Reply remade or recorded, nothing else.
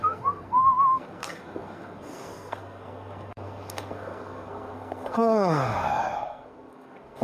remade